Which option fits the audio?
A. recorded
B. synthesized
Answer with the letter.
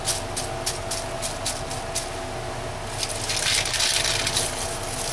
A